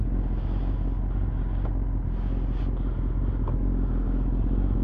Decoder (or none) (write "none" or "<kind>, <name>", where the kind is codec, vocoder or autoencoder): none